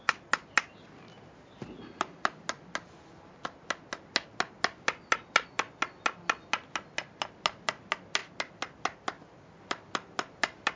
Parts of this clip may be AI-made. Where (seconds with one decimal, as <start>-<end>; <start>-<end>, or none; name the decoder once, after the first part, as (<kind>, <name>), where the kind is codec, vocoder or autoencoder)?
none